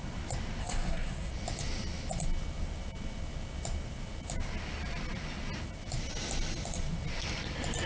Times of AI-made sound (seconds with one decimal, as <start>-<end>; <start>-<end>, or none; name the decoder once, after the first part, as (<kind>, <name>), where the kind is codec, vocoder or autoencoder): 0.6-1.3 (codec, SNAC)